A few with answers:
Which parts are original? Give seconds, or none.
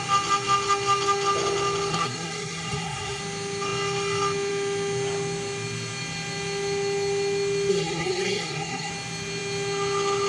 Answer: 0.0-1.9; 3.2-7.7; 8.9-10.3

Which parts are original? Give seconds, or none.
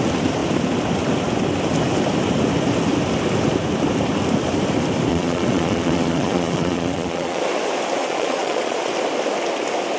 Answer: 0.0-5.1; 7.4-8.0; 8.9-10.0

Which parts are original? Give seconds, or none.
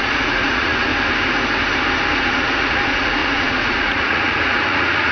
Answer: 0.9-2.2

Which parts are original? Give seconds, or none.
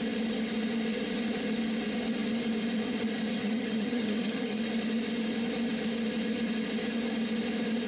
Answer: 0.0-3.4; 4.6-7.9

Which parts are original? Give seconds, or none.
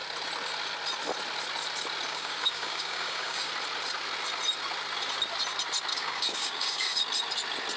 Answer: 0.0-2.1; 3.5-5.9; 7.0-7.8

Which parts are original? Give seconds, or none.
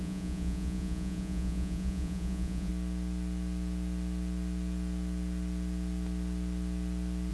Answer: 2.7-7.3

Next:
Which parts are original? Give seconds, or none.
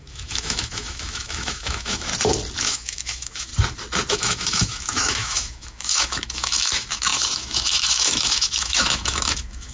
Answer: 2.1-2.6; 3.5-4.1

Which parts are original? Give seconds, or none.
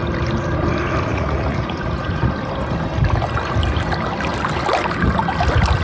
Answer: 0.0-1.1; 2.3-5.8